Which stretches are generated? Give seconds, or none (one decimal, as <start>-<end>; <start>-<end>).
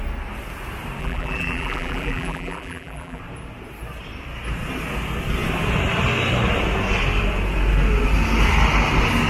1.0-3.2